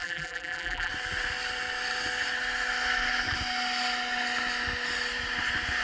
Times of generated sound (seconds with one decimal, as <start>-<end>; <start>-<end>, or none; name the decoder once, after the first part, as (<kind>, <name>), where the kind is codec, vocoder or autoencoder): 0.0-0.9 (vocoder, BigVGAN v2)